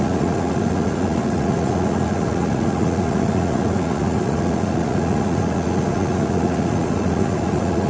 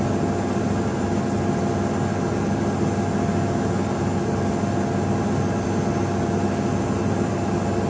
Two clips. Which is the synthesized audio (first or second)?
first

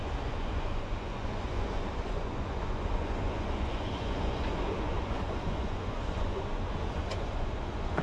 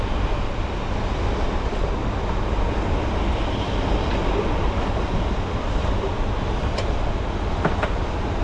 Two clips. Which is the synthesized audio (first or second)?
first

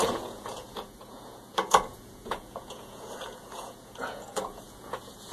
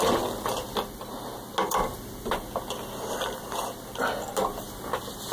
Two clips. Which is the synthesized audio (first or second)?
first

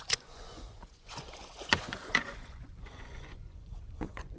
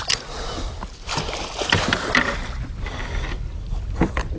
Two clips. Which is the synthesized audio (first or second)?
first